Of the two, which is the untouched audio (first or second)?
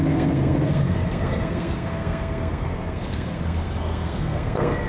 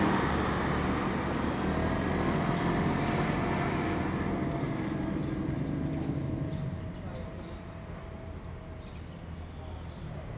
second